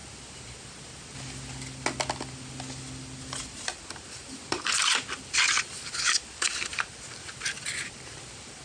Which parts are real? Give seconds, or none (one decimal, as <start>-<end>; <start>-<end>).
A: 0.0-4.2; 4.8-6.7